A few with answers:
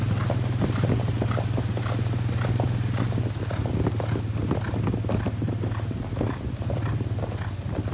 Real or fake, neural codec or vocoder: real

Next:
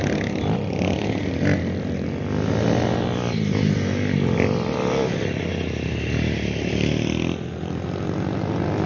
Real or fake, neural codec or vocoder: real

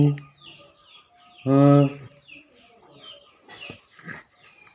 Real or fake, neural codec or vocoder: real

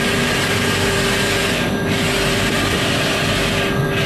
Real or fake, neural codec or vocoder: real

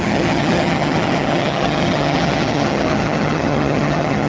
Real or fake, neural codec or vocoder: fake, vocoder, HiFi-GAN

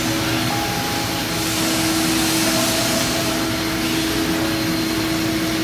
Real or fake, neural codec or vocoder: real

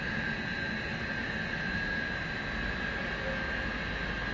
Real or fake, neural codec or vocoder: real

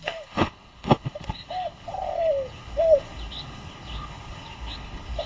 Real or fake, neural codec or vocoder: fake, codec, HILCodec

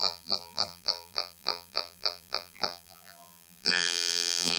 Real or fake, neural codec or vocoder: fake, vocoder, BigVGAN v2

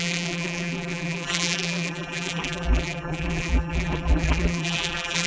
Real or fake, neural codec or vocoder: fake, vocoder, BigVGAN v2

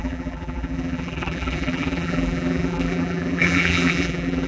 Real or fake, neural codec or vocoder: fake, vocoder, BigVGAN v2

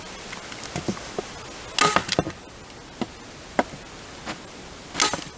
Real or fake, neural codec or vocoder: real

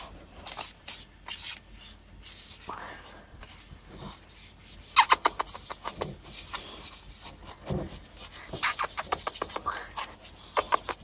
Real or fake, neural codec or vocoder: real